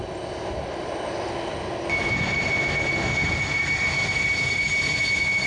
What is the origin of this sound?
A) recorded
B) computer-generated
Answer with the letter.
A